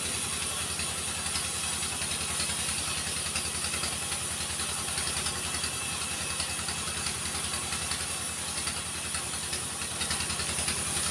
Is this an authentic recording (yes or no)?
yes